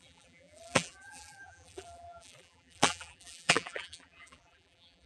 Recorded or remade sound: remade